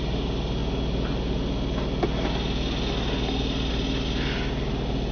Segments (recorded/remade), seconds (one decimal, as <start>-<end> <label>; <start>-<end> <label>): 0.0-5.1 recorded